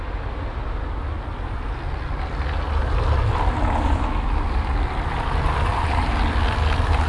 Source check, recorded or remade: recorded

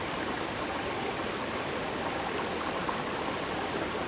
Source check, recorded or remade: remade